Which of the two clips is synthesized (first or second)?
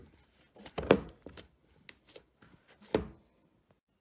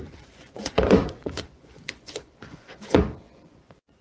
second